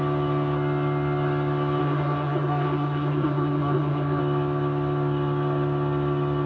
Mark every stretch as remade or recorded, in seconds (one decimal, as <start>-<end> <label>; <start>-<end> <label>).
0.0-1.8 recorded; 1.8-4.2 remade; 4.2-6.5 recorded